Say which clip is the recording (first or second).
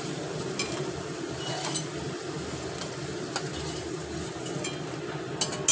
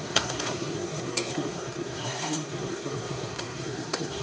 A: first